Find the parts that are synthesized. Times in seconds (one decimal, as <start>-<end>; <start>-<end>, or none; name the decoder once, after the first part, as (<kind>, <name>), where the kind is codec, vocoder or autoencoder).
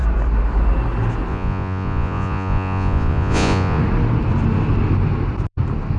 1.3-3.8 (vocoder, Vocos)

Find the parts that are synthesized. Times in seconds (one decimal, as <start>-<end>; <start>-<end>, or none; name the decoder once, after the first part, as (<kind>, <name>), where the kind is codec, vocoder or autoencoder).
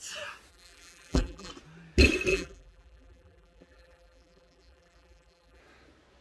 0.5-1.5 (vocoder, BigVGAN v2); 2.3-5.6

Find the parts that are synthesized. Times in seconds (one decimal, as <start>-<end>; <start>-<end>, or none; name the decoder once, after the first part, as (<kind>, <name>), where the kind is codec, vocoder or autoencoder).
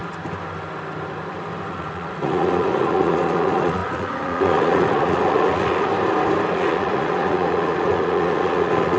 1.7-5.9 (vocoder, Vocos); 6.5-9.0